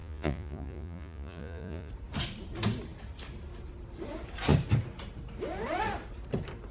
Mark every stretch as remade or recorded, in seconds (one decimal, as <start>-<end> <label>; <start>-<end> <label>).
0.0-1.9 remade; 1.9-6.7 recorded